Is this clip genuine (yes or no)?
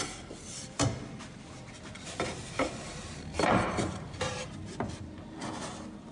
no